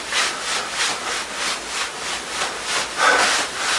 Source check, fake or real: real